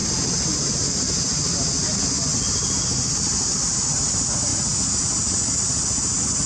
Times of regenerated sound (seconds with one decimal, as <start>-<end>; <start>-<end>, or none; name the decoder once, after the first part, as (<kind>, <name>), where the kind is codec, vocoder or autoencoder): none